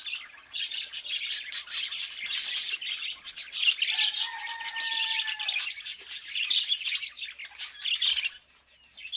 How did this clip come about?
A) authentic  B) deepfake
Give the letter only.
A